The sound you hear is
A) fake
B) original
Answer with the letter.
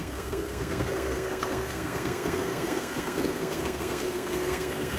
A